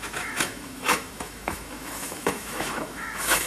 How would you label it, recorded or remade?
remade